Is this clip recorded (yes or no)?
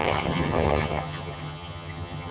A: no